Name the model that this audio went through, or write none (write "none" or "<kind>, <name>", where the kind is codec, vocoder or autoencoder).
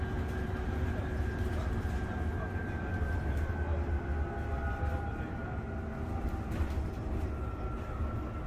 none